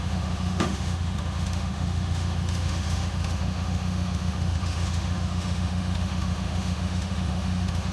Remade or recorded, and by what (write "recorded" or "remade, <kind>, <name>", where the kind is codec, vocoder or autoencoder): remade, autoencoder, DAC-VAE